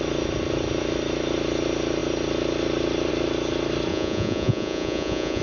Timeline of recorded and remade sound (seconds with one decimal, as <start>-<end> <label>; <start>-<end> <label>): 0.0-3.9 recorded; 3.9-5.4 remade